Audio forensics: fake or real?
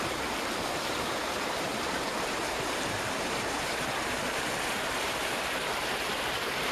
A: fake